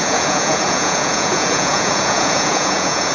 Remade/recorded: remade